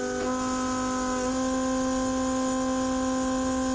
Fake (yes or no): no